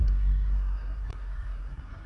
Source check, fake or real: fake